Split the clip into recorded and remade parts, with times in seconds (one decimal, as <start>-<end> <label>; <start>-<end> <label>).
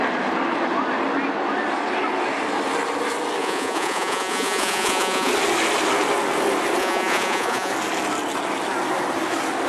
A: 0.0-3.4 recorded; 3.4-5.3 remade; 5.3-6.8 recorded; 6.8-7.7 remade; 7.7-9.7 recorded